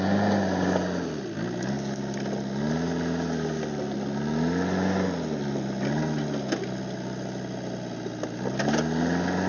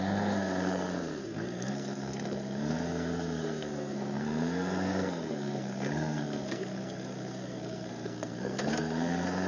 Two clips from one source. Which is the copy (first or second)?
second